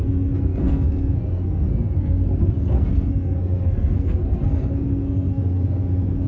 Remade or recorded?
remade